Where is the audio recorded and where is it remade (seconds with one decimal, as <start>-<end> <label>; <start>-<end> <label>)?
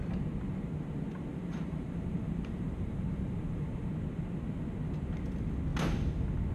0.0-1.3 recorded; 1.3-3.9 remade; 3.9-6.5 recorded